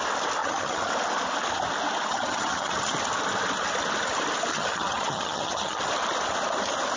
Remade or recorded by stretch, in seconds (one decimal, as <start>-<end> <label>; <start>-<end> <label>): 0.0-0.4 recorded; 0.4-0.9 remade; 0.9-2.1 recorded; 2.1-2.7 remade; 2.7-4.5 recorded; 4.5-5.8 remade; 5.8-7.0 recorded